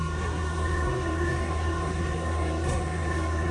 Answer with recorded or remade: remade